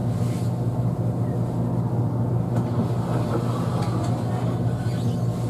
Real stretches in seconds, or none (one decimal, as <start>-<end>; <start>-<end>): 0.0-5.5